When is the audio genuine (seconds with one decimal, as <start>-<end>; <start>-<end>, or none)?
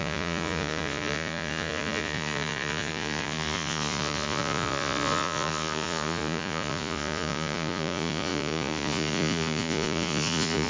none